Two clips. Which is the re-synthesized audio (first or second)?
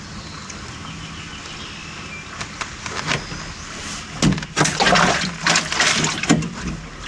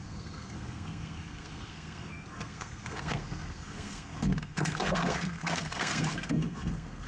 second